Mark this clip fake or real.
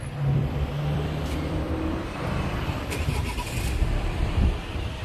fake